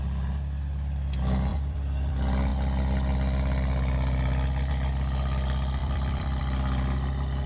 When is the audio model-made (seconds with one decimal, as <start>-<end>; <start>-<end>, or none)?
1.5-2.1; 5.8-6.4